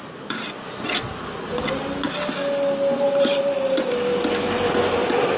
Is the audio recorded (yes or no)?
yes